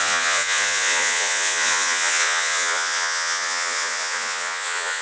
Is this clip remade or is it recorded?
remade